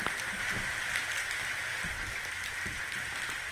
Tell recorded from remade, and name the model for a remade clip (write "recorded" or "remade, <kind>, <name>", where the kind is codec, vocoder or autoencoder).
recorded